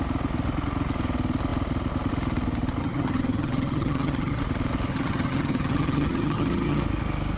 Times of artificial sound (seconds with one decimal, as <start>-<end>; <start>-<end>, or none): 2.8-4.4; 4.9-6.8